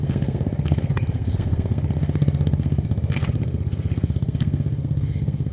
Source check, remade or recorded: remade